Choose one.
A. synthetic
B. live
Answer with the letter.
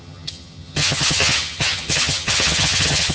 A